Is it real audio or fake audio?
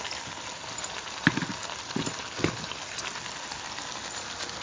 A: real